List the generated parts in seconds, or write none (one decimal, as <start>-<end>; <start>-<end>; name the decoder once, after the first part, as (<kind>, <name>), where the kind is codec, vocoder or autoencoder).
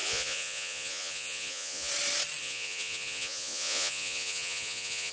0.0-1.9 (vocoder, Vocos); 2.4-5.1